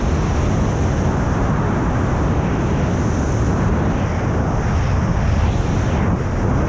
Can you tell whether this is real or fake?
real